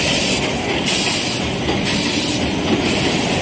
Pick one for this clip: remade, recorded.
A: recorded